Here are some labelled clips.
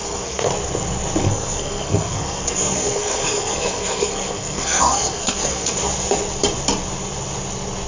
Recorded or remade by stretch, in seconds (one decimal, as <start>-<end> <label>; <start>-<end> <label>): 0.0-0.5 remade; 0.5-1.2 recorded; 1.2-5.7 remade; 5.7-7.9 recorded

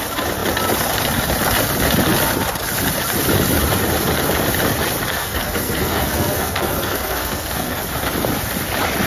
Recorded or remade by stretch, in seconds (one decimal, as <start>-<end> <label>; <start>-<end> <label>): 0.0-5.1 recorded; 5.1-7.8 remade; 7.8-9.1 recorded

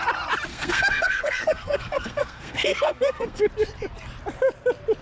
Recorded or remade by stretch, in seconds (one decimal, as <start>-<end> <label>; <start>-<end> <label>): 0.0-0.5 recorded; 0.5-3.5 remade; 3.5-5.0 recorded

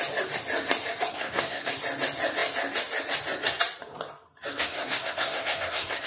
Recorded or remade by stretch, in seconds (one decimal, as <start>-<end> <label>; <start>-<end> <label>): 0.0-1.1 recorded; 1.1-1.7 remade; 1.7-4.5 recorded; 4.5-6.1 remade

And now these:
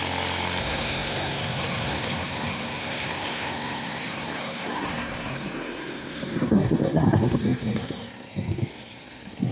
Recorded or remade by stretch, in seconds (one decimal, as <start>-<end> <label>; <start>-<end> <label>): 0.0-0.6 recorded; 0.6-9.5 remade

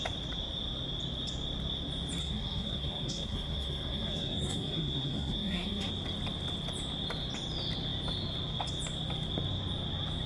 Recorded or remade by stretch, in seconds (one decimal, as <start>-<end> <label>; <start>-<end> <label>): 0.0-2.2 recorded; 2.2-5.9 remade; 5.9-10.3 recorded